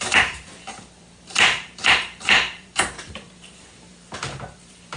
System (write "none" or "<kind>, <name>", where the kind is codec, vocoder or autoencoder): vocoder, BigVGAN v2